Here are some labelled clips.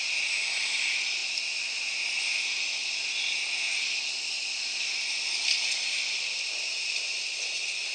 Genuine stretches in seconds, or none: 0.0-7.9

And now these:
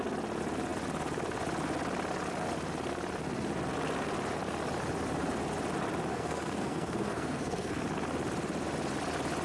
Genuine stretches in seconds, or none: 0.0-6.1; 7.8-9.4

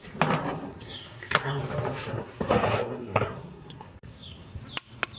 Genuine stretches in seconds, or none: 0.0-0.4; 1.6-2.1; 4.6-5.2